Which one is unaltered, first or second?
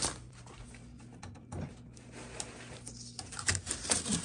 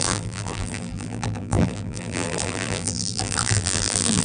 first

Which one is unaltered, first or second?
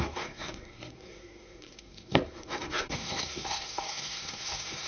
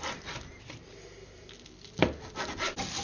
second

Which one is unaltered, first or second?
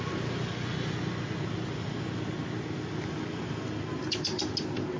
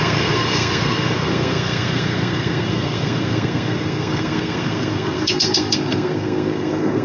first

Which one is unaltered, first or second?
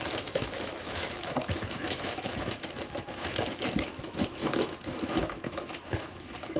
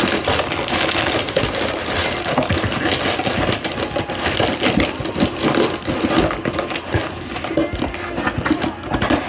second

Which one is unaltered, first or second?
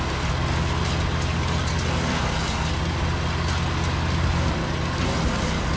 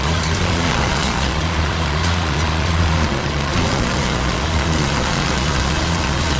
first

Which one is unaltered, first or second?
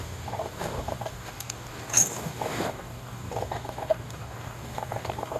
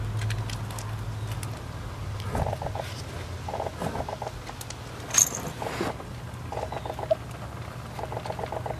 second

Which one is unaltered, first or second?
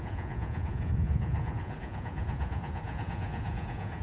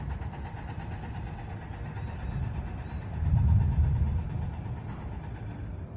second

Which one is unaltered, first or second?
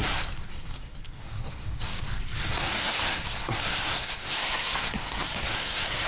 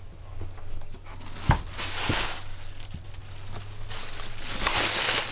second